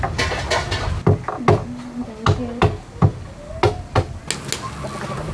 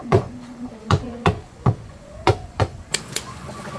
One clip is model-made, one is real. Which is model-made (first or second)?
second